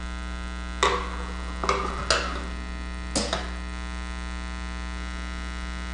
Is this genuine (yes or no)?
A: yes